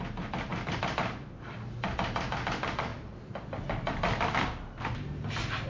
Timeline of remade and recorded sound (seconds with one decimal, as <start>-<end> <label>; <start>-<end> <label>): 0.0-0.5 recorded; 0.5-1.9 remade; 1.9-2.9 recorded; 2.9-4.7 remade; 4.7-5.7 recorded